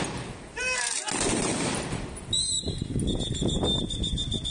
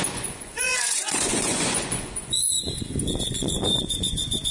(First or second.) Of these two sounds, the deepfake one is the second